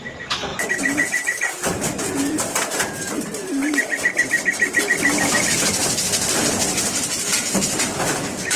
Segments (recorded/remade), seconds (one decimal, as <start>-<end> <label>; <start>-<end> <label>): 0.0-8.6 remade